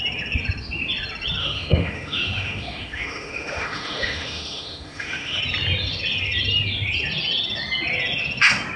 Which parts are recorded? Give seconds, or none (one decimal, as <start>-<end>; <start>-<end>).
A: 0.0-1.4; 5.4-8.8